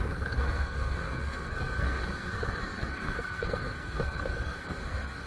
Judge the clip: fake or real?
fake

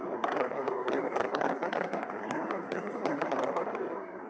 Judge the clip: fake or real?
fake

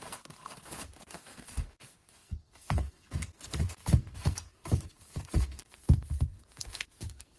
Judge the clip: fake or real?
fake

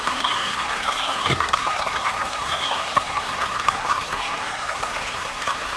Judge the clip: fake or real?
fake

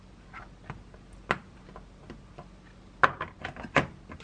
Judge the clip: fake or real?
real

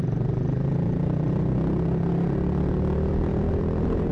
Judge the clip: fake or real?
real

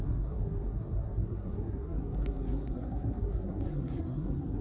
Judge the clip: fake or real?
fake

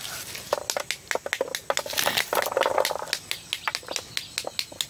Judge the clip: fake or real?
real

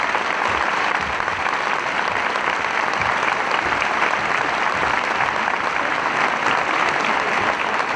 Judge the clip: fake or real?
real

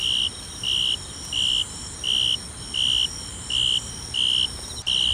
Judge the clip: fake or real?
real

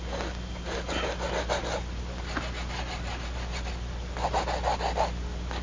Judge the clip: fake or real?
real